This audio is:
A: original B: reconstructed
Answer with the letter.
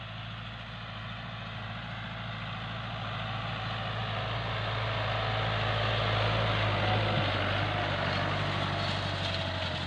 A